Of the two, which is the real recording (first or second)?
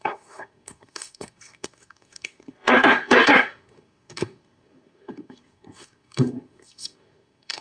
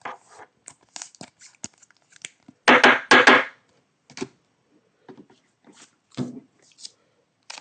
second